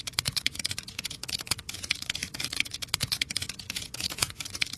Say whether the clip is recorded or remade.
remade